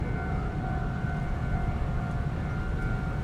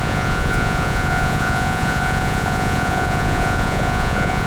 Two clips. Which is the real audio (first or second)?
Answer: first